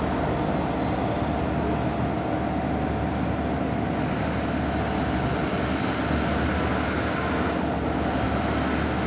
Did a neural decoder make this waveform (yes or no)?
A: no